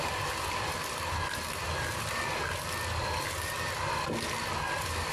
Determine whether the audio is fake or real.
real